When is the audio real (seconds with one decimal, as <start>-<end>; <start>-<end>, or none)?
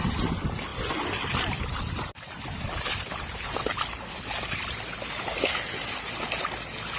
0.0-7.0